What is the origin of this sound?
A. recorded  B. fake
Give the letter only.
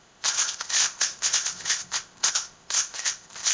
B